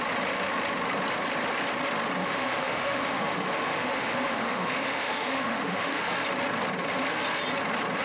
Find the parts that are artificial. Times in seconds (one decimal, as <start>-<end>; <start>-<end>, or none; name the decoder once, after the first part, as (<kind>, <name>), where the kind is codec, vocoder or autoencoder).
2.2-6.0 (autoencoder, DAC-VAE)